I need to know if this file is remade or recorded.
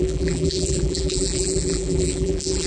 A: remade